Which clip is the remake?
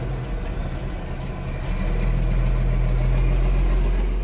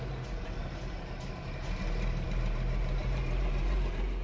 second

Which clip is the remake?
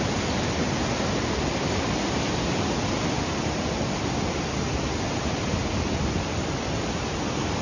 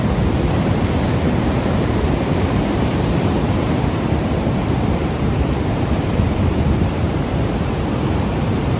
second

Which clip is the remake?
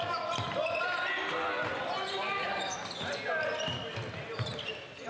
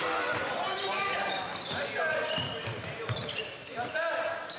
second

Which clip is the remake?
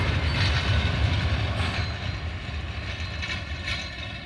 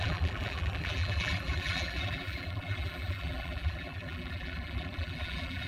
second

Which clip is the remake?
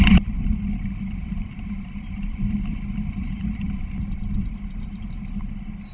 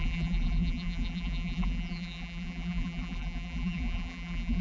second